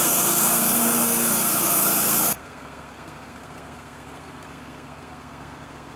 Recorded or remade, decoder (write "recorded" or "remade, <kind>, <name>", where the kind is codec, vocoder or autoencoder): remade, codec, SNAC